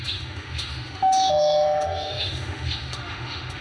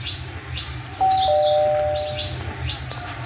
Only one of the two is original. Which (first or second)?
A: second